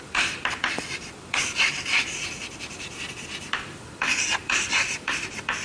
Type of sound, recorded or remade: remade